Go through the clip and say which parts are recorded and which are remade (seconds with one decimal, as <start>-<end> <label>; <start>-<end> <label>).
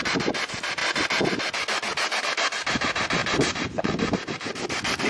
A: 0.0-5.1 recorded